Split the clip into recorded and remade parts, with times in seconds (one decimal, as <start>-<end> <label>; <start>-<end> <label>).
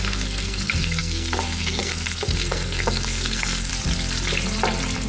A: 0.0-3.7 remade; 3.7-5.1 recorded